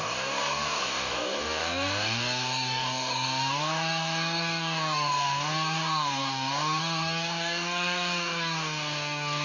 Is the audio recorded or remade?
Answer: remade